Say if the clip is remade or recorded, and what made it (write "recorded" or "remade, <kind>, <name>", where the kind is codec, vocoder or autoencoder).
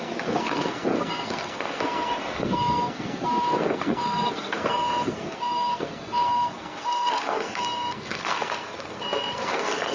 remade, codec, SNAC